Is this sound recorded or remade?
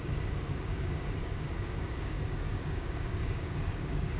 remade